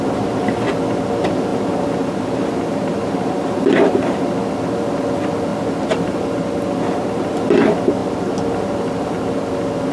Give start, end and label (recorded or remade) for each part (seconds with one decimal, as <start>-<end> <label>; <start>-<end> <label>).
0.0-1.5 recorded; 1.5-4.3 remade; 4.3-9.9 recorded